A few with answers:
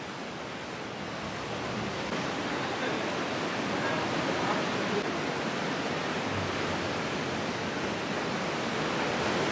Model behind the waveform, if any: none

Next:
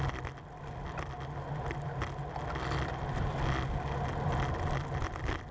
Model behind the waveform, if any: none